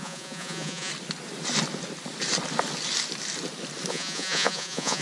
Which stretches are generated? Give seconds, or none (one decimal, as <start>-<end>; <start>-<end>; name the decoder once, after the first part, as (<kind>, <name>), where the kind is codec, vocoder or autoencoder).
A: 0.0-0.9 (vocoder, Vocos); 3.9-5.0